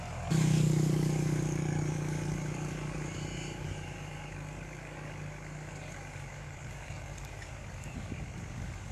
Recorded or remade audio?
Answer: remade